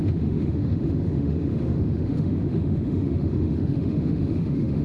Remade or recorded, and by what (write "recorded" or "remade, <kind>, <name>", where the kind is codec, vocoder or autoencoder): remade, autoencoder, DAC-VAE